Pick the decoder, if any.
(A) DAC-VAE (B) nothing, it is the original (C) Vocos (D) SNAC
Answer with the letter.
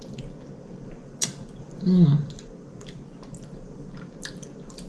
B